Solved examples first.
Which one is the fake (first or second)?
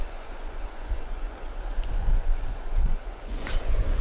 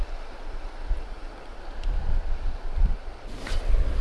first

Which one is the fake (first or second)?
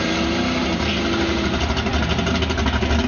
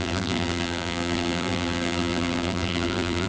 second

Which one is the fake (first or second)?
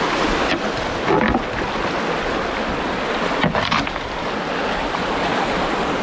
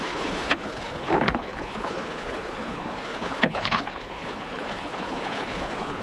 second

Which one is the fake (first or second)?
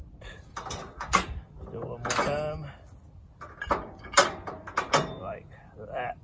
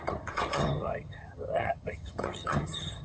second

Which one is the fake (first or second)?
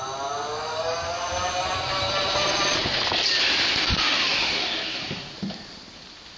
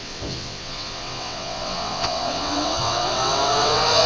second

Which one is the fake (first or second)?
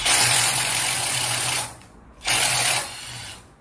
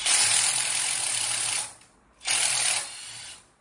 first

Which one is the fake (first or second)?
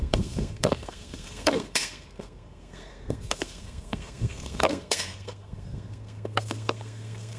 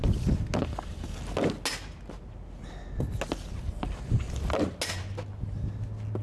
first